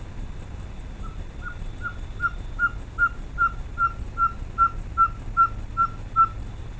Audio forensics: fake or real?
real